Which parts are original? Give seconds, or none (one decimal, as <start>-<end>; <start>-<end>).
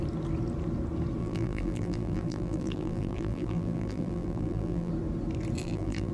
0.0-1.2; 4.9-5.6